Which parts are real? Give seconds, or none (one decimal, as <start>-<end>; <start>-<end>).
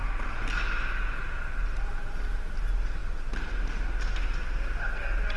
0.0-5.4